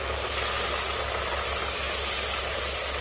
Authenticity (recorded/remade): recorded